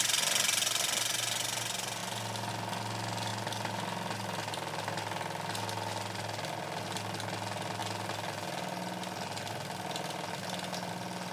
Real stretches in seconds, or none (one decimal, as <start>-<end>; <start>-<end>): 0.0-11.3